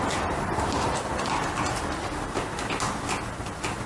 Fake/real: real